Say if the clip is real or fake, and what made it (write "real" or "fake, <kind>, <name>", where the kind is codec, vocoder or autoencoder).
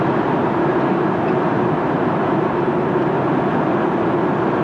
real